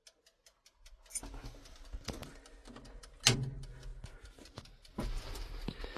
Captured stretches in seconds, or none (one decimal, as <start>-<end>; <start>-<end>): 0.0-6.0

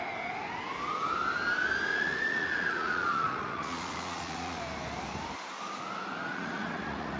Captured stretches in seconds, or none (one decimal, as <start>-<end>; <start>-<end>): 0.0-1.9; 4.6-6.3

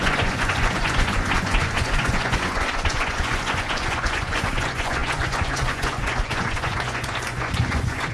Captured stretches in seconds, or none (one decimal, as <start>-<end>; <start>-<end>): none

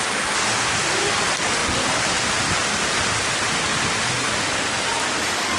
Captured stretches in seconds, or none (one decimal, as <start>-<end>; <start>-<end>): 0.0-5.6

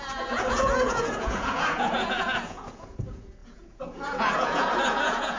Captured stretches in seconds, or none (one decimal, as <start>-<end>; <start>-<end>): none